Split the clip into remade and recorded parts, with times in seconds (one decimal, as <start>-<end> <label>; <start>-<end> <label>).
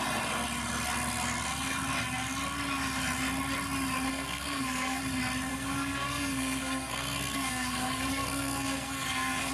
0.0-4.1 recorded; 4.1-5.0 remade; 5.0-5.5 recorded; 5.5-9.5 remade